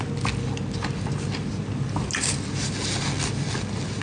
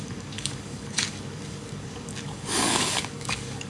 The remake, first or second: second